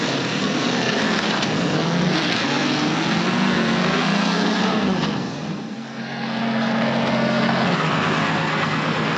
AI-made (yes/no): yes